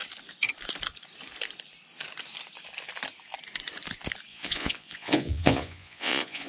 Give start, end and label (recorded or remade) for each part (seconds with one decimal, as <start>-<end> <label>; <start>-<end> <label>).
0.0-4.3 recorded; 4.3-6.5 remade